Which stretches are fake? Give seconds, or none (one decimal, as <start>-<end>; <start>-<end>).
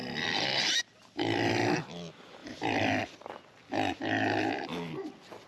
0.0-0.8; 2.4-3.0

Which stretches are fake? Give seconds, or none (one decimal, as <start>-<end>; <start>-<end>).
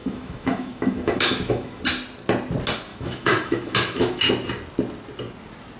0.0-1.8; 2.9-4.3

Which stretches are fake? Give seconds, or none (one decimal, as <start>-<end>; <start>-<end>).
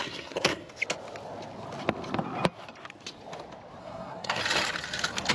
0.0-0.6; 3.8-4.4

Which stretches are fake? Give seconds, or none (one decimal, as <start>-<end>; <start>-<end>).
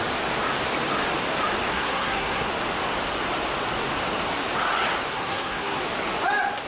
1.7-2.5; 5.1-5.8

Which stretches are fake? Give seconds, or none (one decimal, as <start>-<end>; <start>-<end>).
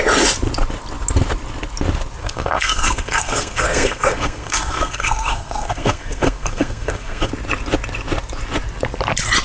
2.2-7.3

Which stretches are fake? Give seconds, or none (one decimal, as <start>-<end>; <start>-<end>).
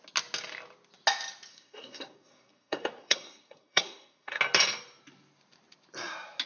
1.5-4.4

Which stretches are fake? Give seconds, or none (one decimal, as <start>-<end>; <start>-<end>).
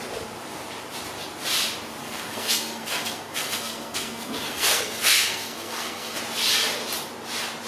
2.0-6.2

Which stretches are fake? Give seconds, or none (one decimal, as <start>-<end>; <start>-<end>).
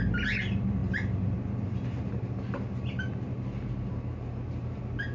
none